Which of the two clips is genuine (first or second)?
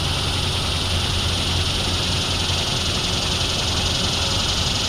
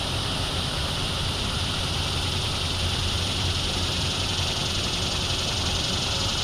first